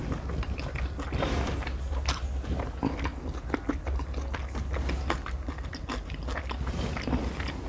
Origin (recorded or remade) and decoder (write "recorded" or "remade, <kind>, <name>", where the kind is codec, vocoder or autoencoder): recorded